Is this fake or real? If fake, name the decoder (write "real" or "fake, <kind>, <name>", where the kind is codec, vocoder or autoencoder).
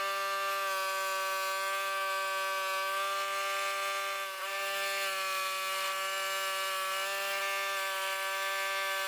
real